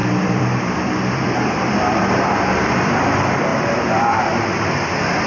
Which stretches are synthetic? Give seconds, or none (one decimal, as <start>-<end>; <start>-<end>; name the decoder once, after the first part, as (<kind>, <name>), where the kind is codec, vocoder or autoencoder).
0.0-3.0 (vocoder, BigVGAN v2); 3.5-4.2